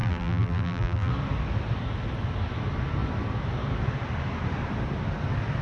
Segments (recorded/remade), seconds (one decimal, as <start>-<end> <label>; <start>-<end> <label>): 0.0-1.1 remade; 1.1-5.6 recorded